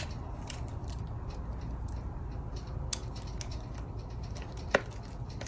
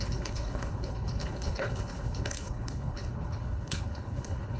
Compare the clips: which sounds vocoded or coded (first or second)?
second